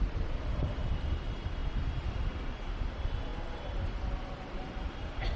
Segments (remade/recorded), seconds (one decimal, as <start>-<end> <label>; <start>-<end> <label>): 0.0-1.6 remade; 1.6-2.5 recorded; 2.5-5.4 remade